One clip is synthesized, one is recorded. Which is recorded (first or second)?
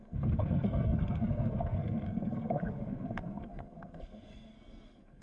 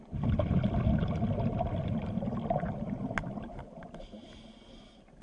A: second